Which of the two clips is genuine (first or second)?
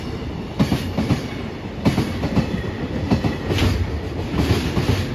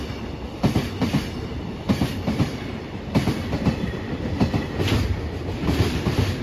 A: first